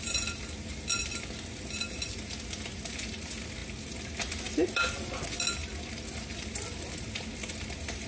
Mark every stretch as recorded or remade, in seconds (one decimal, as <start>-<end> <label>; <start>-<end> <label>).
0.0-8.1 recorded